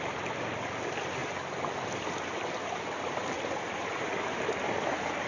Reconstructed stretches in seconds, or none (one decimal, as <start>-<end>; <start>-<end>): none